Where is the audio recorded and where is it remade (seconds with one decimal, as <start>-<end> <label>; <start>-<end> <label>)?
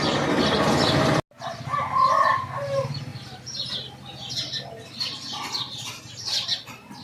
0.0-7.0 recorded